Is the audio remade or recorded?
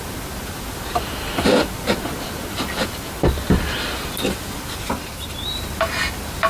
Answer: recorded